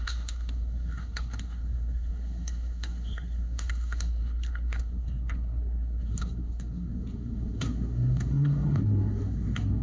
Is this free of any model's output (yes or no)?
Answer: no